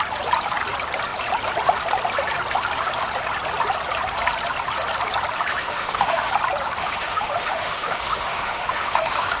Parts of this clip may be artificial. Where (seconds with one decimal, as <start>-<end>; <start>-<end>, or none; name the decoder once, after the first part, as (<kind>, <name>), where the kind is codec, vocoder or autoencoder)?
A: 5.5-6.3 (autoencoder, DAC-VAE); 6.8-9.4